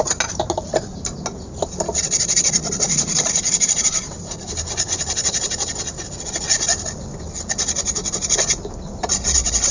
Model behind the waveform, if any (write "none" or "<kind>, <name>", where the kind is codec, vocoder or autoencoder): none